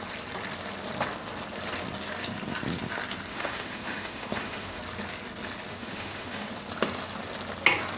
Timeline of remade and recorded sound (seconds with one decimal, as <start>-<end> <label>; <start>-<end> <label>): 0.0-3.3 recorded; 3.3-4.8 remade; 4.8-5.7 recorded; 5.7-6.5 remade; 6.5-8.0 recorded